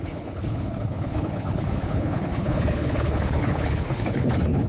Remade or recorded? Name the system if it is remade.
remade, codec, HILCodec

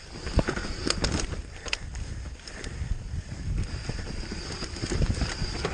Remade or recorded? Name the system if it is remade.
recorded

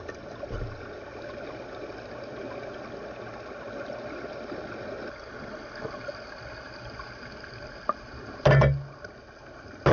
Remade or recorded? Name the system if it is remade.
recorded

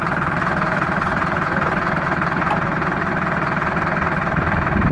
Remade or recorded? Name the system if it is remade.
remade, vocoder, BigVGAN v2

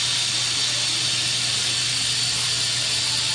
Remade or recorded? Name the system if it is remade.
recorded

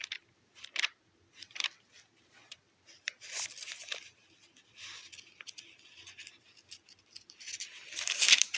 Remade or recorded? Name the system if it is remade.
remade, vocoder, BigVGAN v2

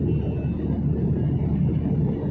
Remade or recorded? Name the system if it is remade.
recorded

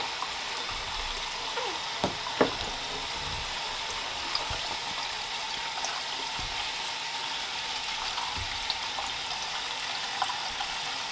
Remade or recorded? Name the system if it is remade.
recorded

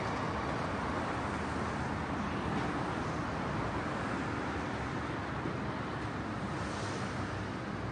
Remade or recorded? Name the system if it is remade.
recorded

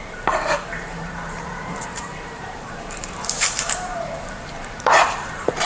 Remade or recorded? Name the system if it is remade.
remade, vocoder, BigVGAN v2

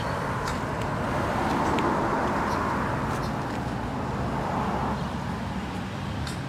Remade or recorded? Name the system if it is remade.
recorded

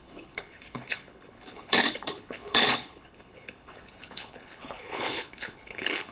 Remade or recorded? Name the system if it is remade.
remade, codec, HILCodec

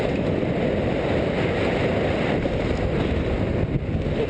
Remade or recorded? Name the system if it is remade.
recorded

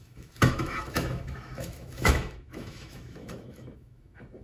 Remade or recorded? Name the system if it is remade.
remade, autoencoder, DAC-VAE